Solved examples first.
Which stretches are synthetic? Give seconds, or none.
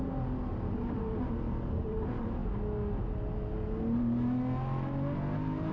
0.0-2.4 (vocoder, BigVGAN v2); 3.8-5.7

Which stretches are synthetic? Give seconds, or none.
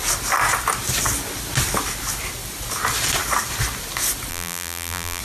4.3-5.2 (vocoder, BigVGAN v2)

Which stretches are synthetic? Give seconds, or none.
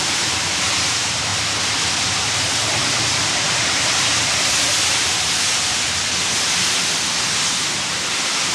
1.3-2.2 (vocoder, BigVGAN v2); 2.8-6.3